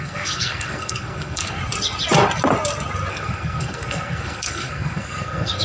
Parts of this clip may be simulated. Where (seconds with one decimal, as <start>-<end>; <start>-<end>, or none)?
0.0-1.6; 3.1-5.6